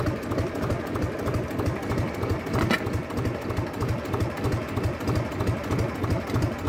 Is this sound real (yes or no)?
yes